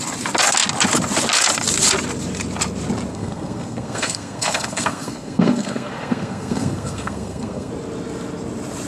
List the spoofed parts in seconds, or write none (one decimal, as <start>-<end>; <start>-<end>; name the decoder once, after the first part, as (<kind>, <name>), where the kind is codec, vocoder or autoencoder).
3.1-7.7 (codec, SNAC)